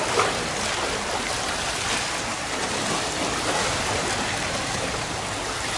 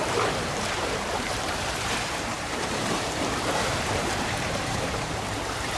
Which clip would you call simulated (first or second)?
second